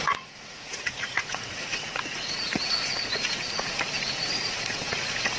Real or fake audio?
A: fake